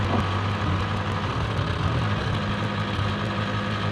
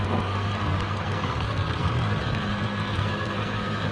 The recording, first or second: first